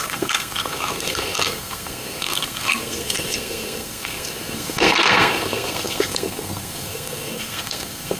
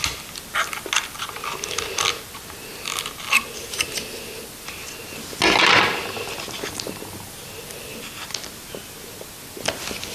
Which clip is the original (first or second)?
second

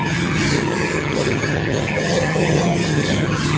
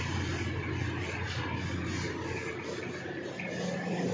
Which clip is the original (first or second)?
second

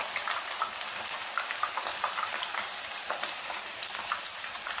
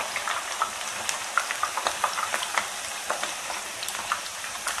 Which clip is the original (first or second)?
first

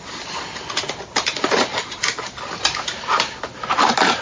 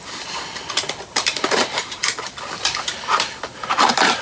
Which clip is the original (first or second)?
first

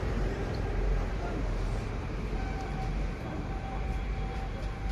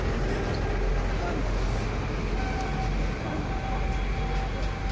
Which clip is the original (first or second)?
second